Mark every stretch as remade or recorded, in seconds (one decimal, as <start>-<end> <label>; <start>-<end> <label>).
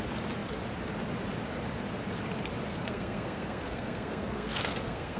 0.0-2.7 recorded; 2.7-5.2 remade